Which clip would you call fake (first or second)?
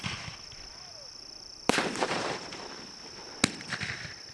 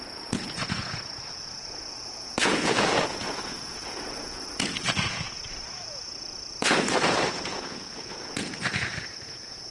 second